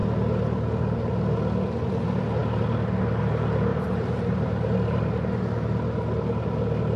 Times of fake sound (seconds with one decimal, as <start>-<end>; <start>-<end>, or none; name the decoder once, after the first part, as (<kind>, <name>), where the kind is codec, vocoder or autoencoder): 3.7-5.0 (vocoder, BigVGAN v2)

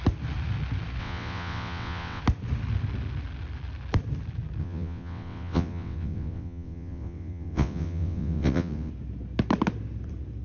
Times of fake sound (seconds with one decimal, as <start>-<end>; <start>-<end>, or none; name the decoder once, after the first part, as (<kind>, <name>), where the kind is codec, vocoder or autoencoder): 1.0-2.2 (vocoder, WaveNeXt); 4.6-8.9

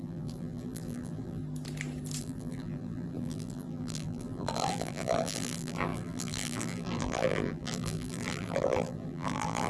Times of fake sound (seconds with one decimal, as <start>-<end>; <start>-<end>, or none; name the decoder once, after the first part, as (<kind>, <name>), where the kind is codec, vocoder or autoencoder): 0.0-1.4 (vocoder, BigVGAN v2); 2.2-9.7

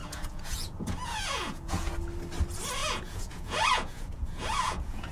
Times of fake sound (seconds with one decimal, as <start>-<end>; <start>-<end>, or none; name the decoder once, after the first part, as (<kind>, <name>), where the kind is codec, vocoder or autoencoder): 0.0-1.9 (vocoder, Vocos); 2.8-5.1

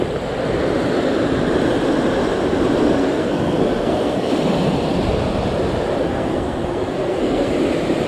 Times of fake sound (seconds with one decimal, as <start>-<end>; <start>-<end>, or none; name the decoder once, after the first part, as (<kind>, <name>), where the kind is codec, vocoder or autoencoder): 3.0-4.3 (codec, SNAC); 6.0-7.5